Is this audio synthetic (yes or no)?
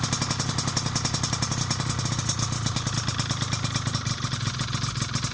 no